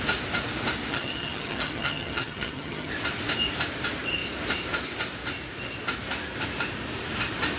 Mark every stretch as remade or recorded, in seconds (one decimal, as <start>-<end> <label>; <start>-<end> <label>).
0.0-0.9 recorded; 0.9-2.9 remade; 2.9-7.6 recorded